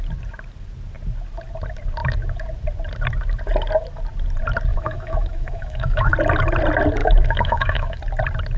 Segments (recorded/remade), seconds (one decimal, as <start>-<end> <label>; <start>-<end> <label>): 0.0-4.7 recorded; 4.7-6.1 remade; 6.1-7.0 recorded; 7.0-8.0 remade; 8.0-8.6 recorded

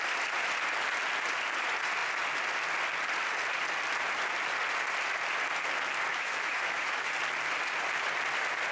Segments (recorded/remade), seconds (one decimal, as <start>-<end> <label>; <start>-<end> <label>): 0.0-6.1 recorded; 6.1-7.1 remade; 7.1-8.7 recorded

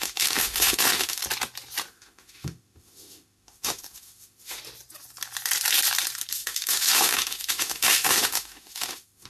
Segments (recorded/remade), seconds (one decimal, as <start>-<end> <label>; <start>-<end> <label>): 0.0-1.2 remade; 1.2-1.9 recorded; 1.9-4.6 remade; 4.6-6.3 recorded; 6.3-9.3 remade

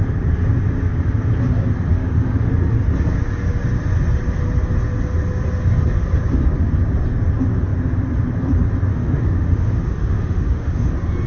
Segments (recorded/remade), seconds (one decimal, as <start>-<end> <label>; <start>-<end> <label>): 0.0-1.9 recorded; 1.9-2.5 remade; 2.5-8.9 recorded; 8.9-10.9 remade; 10.9-11.3 recorded

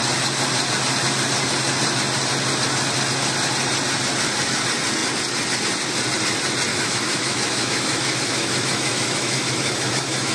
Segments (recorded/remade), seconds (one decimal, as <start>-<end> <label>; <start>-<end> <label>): 0.0-6.7 recorded; 6.7-10.3 remade

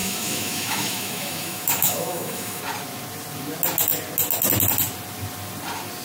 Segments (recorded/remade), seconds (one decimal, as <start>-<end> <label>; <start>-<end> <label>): 0.0-2.6 remade; 2.6-6.0 recorded

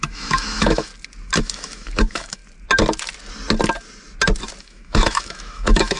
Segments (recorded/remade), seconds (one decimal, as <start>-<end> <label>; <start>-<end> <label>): 0.0-0.9 remade; 0.9-1.4 recorded; 1.4-2.4 remade; 2.4-4.6 recorded; 4.6-6.0 remade